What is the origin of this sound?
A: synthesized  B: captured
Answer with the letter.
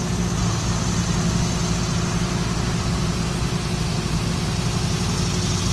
B